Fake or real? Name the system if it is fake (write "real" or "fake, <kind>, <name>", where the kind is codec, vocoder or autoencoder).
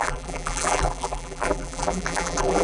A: fake, vocoder, BigVGAN v2